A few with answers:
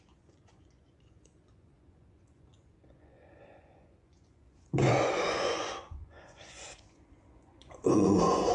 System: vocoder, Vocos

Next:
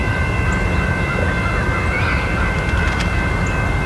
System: none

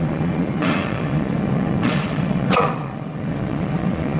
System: vocoder, Vocos